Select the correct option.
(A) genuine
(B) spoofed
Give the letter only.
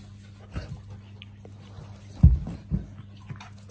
A